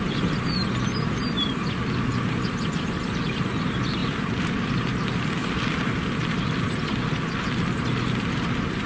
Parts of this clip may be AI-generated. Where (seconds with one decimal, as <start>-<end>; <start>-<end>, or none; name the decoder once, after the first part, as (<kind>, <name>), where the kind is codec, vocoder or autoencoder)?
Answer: 0.0-8.9 (vocoder, BigVGAN v2)